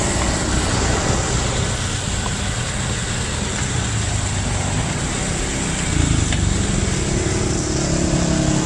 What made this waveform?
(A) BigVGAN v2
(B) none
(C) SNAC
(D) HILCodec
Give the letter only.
B